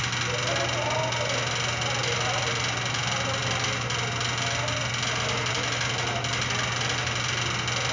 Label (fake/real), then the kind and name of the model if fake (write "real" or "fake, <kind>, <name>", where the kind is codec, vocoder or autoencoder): real